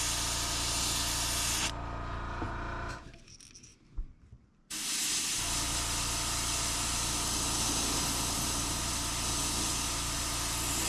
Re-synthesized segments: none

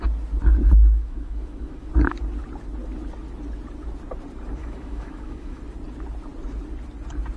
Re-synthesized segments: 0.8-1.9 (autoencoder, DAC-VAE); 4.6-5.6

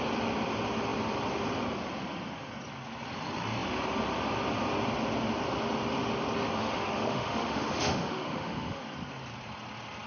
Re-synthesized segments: 6.6-8.8 (autoencoder, DAC-VAE)

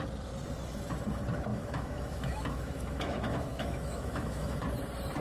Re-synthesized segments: 1.5-4.6 (autoencoder, DAC-VAE)

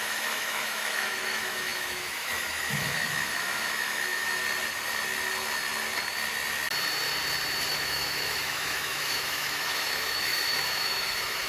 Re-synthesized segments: 0.0-4.4 (autoencoder, DAC-VAE); 7.7-11.5